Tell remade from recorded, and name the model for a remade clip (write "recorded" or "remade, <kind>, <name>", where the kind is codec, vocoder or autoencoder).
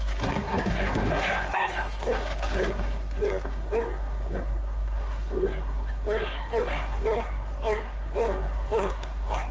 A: remade, codec, SNAC